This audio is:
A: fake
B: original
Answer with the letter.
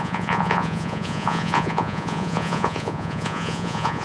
A